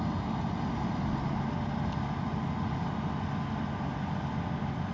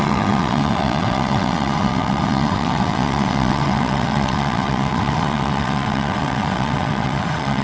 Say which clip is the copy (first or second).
second